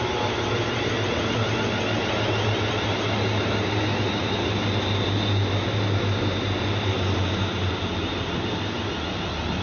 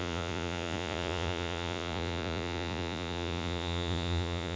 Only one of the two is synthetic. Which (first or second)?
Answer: second